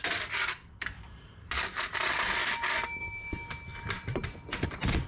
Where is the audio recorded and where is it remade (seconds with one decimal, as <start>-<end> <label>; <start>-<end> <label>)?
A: 0.0-5.1 recorded